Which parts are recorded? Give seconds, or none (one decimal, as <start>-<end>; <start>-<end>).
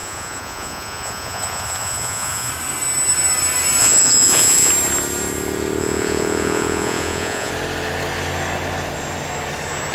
2.5-3.8; 4.7-5.8; 7.5-9.9